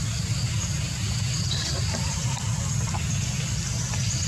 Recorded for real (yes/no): yes